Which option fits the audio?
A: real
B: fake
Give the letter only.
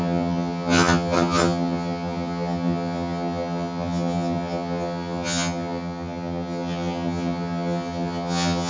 B